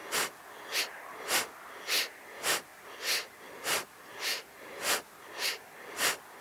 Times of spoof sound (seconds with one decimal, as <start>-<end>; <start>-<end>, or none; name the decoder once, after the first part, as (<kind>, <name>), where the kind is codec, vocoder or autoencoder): none

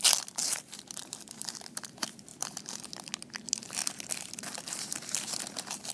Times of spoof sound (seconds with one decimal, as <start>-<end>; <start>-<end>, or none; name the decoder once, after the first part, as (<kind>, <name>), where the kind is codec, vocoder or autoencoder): 0.4-1.5 (vocoder, BigVGAN v2); 2.3-3.1; 3.8-4.4

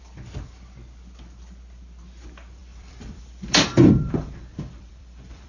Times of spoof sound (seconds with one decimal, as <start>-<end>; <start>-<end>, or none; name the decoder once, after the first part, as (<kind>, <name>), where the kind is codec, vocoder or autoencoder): 2.6-5.5 (vocoder, BigVGAN v2)

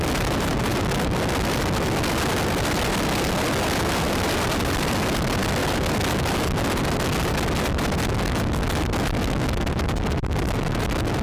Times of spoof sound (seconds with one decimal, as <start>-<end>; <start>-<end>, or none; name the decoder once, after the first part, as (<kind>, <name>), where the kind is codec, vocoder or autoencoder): none

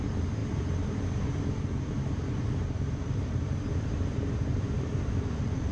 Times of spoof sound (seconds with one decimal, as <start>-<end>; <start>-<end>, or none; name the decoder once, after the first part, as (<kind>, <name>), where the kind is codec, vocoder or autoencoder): 0.0-5.7 (vocoder, BigVGAN v2)